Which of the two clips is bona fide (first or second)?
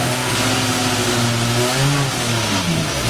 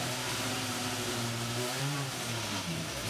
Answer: first